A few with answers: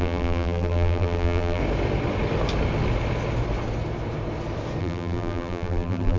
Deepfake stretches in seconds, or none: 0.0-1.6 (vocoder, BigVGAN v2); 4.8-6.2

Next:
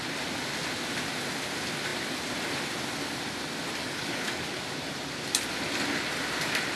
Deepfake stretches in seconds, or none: 3.8-4.5 (codec, DAC)